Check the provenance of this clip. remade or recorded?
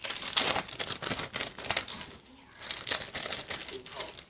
recorded